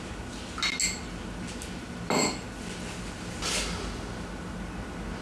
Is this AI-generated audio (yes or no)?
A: no